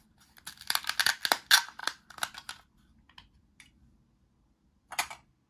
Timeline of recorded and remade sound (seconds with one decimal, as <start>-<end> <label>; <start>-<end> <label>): 0.0-5.5 recorded